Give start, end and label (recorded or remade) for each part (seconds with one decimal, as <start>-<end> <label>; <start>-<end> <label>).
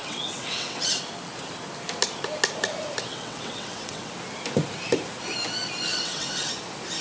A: 0.0-1.0 remade; 1.0-3.1 recorded; 3.1-4.1 remade; 4.1-5.9 recorded; 5.9-6.5 remade; 6.5-7.0 recorded